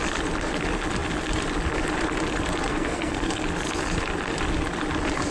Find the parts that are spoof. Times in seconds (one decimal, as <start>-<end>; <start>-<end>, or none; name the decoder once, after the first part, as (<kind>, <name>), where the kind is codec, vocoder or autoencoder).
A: 2.7-3.4 (codec, SNAC)